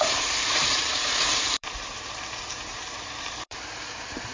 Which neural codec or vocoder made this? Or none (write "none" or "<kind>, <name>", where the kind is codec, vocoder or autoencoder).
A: vocoder, BigVGAN v2